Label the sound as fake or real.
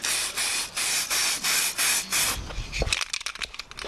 real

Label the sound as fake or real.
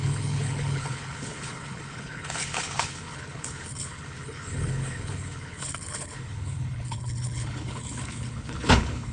fake